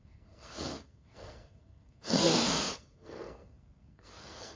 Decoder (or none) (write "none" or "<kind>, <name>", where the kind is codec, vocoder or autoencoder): codec, SNAC